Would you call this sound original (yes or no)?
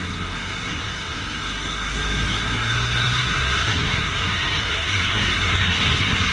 no